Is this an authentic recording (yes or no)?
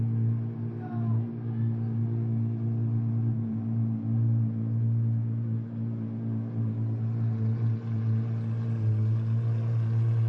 yes